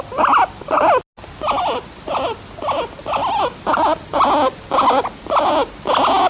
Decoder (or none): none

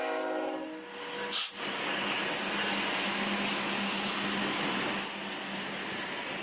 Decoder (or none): none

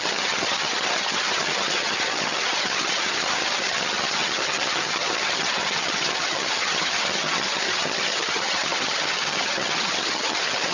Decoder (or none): vocoder, HiFi-GAN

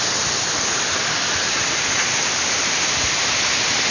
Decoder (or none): none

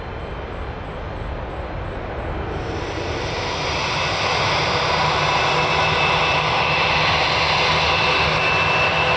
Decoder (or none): none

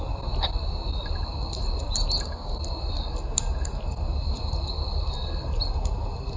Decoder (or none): none